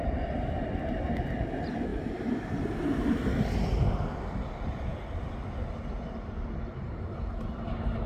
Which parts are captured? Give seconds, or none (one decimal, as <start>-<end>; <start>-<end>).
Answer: 0.0-8.1

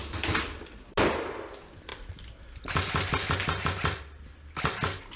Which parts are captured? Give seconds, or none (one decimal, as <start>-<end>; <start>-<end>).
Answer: 0.0-5.2

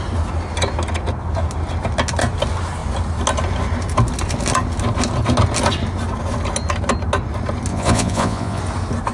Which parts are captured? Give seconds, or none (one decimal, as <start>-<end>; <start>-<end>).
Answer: 0.0-7.7; 8.6-9.1